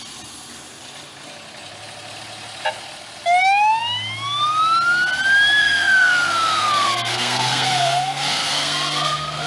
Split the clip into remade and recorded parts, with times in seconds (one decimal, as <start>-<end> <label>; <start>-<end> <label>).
0.0-5.6 recorded; 5.6-9.5 remade